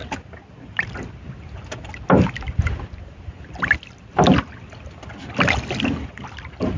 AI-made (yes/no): no